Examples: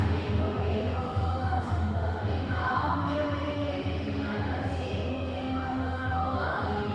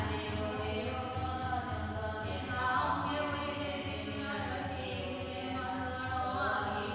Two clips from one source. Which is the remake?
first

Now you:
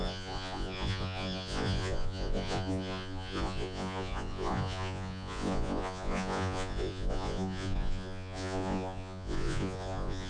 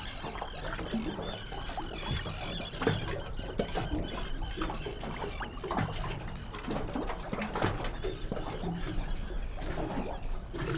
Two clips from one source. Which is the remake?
first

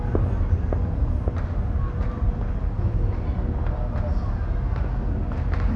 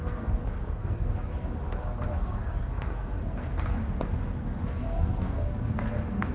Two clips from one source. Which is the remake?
second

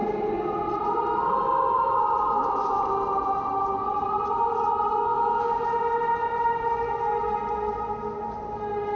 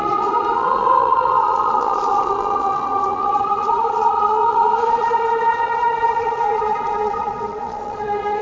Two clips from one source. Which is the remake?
second